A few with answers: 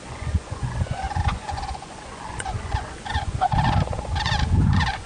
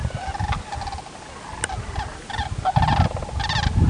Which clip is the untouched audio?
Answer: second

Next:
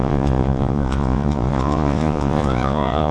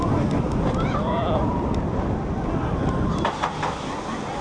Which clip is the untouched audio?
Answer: second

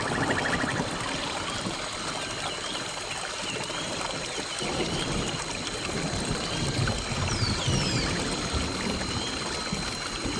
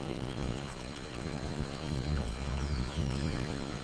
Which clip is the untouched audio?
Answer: first